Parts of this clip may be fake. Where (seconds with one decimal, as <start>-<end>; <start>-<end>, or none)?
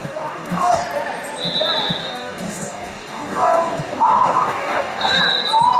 0.0-0.8; 2.0-5.2